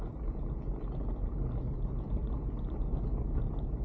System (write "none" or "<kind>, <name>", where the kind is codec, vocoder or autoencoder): none